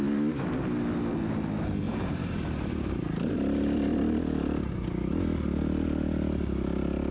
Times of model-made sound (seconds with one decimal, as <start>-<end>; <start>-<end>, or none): 1.9-3.3